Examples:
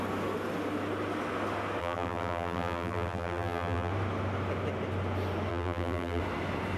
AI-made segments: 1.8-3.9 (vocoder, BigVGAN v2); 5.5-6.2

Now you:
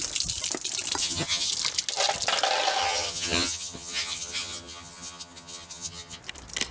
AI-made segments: 1.0-1.5 (vocoder, HiFi-GAN); 2.8-6.2

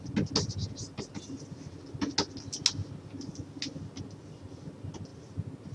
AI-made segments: none

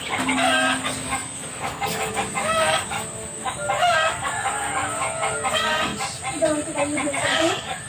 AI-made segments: 0.0-5.9 (codec, DAC); 7.1-7.9